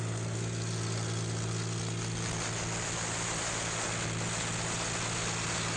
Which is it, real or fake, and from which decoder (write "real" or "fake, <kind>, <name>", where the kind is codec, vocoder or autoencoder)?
real